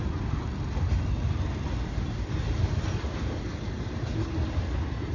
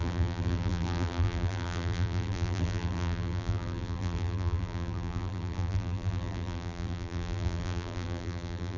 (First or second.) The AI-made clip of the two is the second